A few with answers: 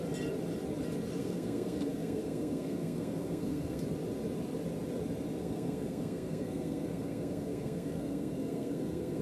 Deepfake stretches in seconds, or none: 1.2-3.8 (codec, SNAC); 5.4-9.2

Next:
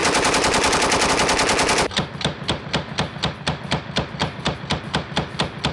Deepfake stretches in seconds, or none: 0.0-1.1 (vocoder, BigVGAN v2); 4.2-4.8

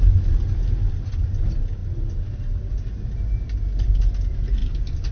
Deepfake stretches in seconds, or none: none